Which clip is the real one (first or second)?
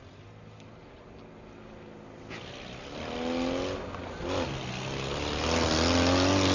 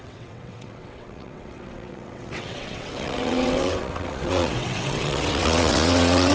first